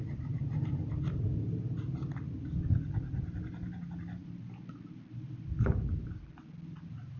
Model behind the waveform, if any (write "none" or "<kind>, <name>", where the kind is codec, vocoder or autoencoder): none